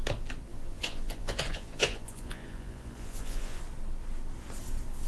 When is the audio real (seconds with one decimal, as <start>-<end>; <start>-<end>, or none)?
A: 0.0-0.5; 3.6-5.1